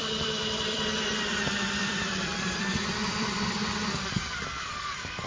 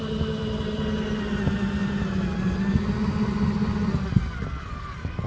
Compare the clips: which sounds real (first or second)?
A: second